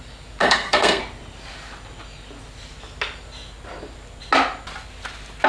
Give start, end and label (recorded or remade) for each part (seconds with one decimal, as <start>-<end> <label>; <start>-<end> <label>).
0.0-0.4 recorded; 0.4-1.0 remade; 1.0-5.5 recorded